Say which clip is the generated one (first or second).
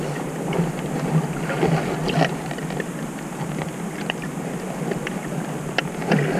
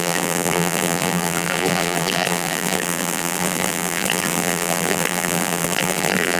second